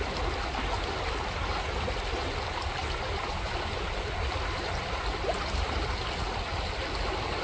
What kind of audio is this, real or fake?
real